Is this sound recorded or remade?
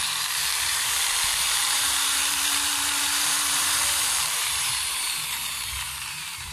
remade